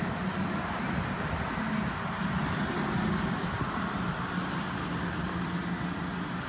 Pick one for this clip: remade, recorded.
recorded